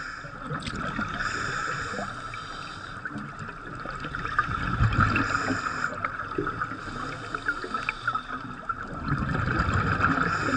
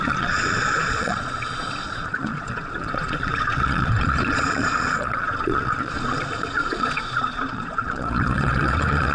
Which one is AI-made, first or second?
second